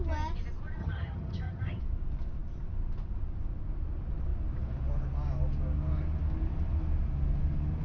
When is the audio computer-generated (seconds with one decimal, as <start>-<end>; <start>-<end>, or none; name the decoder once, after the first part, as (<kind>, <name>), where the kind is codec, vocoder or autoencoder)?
0.8-1.8 (vocoder, HiFi-GAN)